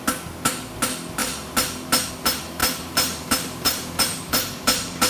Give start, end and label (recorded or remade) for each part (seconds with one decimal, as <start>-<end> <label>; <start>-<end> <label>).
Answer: 0.0-2.6 recorded; 2.6-5.1 remade